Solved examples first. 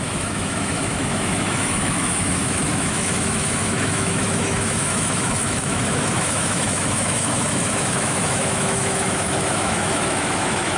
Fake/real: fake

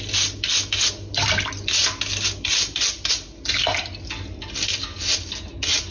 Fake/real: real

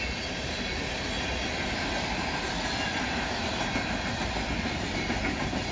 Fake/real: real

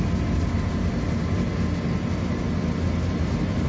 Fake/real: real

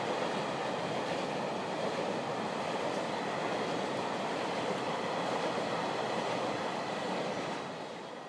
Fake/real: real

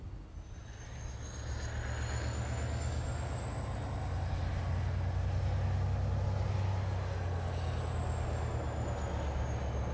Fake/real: real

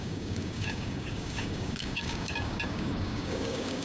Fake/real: fake